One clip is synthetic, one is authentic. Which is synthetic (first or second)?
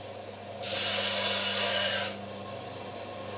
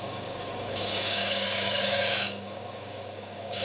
second